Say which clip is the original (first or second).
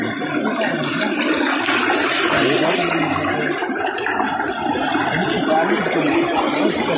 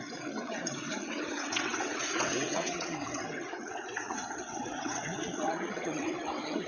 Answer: first